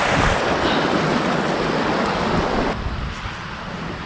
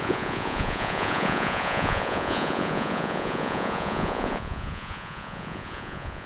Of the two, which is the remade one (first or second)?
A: second